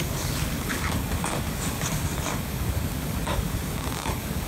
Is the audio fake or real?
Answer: fake